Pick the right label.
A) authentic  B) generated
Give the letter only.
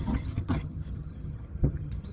B